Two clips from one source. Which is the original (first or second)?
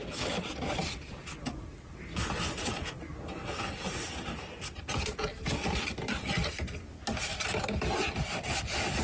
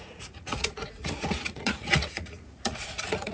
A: first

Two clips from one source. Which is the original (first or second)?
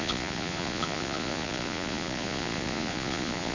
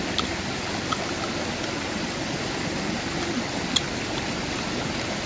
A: second